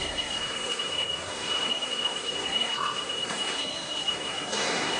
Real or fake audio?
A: fake